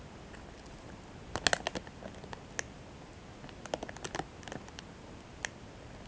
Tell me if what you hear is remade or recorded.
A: recorded